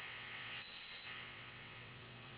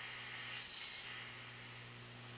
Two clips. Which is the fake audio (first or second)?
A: first